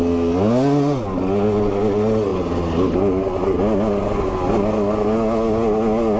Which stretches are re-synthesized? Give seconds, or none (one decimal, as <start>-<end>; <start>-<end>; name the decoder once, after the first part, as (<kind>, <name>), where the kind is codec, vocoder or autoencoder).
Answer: none